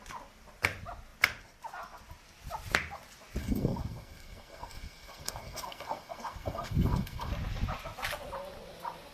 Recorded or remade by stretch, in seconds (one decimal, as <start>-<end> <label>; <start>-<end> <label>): 0.0-3.4 recorded; 3.4-7.3 remade; 7.3-9.1 recorded

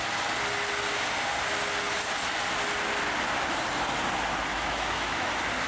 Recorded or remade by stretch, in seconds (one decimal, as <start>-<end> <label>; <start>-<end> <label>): 0.0-4.5 recorded; 4.5-5.3 remade; 5.3-5.7 recorded

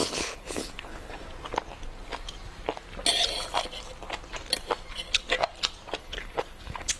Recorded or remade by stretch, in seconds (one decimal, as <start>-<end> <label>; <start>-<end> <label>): 0.0-1.1 remade; 1.1-6.0 recorded; 6.0-7.0 remade

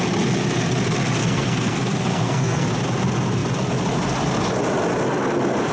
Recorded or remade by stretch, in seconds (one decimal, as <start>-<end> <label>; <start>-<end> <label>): 0.0-1.2 recorded; 1.2-2.7 remade; 2.7-5.7 recorded

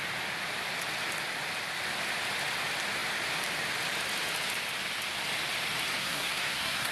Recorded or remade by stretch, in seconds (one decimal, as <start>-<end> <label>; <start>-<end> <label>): 0.0-6.0 recorded; 6.0-6.9 remade